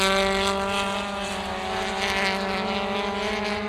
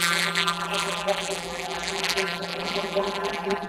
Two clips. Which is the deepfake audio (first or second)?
second